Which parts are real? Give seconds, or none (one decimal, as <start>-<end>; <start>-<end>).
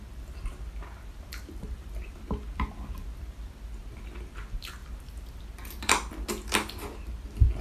0.0-7.6